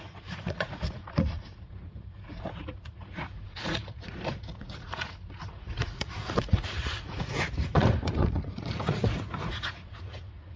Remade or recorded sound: remade